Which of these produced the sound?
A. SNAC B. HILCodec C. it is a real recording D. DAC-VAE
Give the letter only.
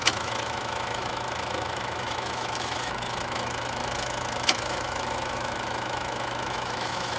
D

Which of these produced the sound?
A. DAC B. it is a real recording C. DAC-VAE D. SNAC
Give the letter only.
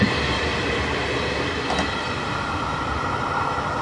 B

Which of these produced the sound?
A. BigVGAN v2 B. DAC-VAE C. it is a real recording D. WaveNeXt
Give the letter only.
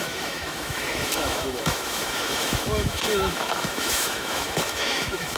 B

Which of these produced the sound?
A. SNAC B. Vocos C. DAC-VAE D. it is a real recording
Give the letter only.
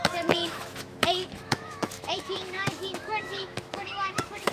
C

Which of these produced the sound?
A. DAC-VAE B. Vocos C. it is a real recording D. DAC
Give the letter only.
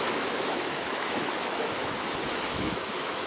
A